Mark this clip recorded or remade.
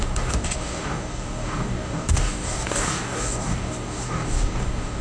remade